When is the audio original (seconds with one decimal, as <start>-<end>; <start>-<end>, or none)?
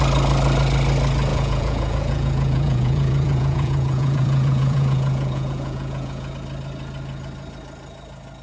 0.0-1.3; 6.3-8.4